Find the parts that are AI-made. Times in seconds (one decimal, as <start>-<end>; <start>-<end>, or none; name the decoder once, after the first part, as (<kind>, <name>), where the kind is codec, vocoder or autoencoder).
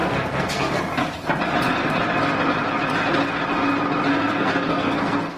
0.0-0.8 (codec, SNAC); 4.1-5.4